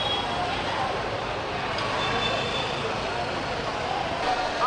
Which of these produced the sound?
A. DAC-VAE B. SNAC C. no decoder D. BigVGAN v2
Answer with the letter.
C